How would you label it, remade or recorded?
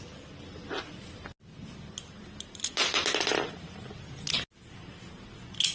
recorded